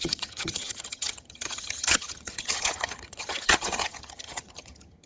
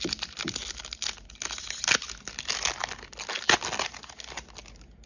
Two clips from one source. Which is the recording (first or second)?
second